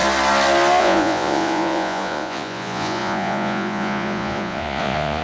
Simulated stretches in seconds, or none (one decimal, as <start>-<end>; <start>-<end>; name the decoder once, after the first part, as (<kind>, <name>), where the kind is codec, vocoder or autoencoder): 0.8-5.2 (vocoder, Vocos)